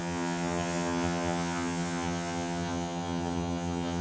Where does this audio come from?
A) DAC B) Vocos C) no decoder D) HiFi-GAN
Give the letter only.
D